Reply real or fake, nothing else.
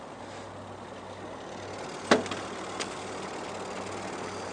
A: real